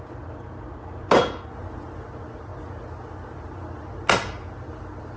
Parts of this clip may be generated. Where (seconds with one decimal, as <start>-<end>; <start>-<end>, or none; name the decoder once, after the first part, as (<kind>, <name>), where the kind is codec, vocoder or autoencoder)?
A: none